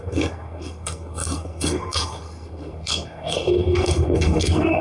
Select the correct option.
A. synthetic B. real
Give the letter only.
A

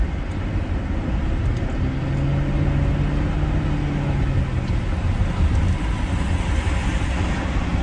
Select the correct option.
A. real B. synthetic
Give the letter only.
A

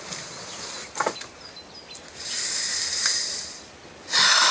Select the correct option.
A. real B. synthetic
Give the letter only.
A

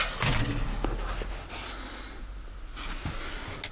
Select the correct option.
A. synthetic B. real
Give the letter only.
B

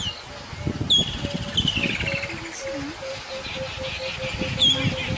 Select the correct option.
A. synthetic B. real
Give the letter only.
B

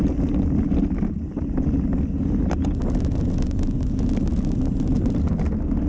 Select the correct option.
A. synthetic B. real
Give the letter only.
B